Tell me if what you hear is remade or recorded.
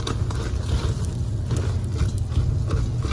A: recorded